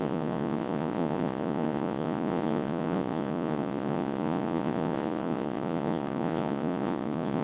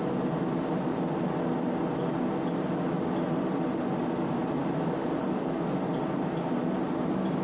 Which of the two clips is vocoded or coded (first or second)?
first